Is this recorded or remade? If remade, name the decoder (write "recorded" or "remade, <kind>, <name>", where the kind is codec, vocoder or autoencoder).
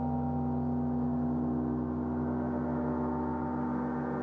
recorded